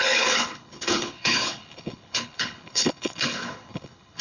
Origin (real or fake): fake